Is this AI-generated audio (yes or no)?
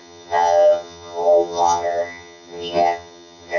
yes